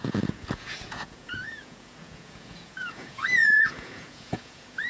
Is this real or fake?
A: fake